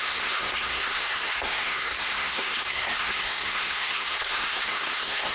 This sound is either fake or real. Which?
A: fake